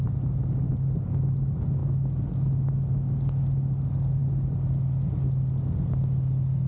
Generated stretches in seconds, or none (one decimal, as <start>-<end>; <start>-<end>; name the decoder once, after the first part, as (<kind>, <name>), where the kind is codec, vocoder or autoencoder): none